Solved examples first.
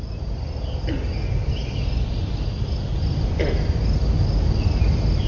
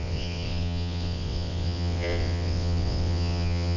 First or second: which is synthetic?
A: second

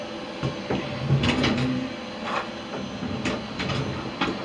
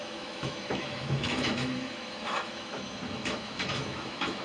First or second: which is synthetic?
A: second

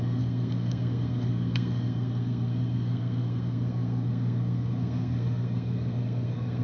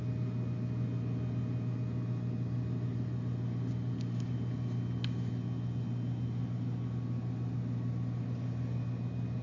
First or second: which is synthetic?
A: first